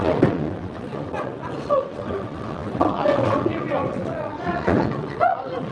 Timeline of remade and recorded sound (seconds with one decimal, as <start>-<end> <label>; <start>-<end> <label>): 0.0-5.7 remade